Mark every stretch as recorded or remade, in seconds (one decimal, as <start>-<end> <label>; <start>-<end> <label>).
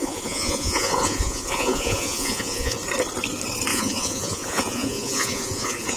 0.0-2.8 remade; 2.8-3.7 recorded; 3.7-6.0 remade